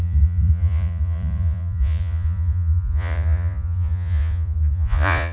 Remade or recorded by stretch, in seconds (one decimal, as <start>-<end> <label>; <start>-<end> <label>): 0.0-5.3 remade